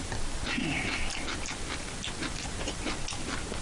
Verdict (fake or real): real